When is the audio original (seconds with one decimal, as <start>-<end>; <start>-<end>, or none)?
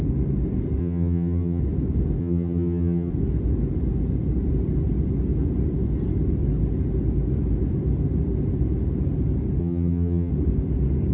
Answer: 0.0-0.8; 1.6-2.2; 3.1-9.6; 10.3-11.1